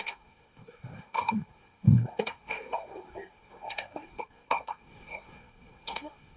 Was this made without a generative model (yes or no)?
no